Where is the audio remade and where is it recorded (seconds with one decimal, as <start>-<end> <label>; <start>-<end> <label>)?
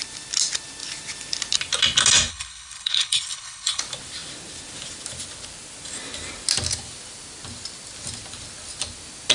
0.0-2.3 recorded; 2.3-3.8 remade; 3.8-9.3 recorded